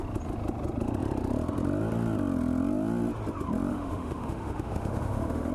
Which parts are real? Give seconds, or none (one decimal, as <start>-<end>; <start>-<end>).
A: 0.0-3.7